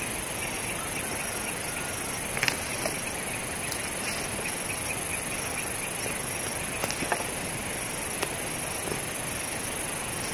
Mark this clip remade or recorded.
recorded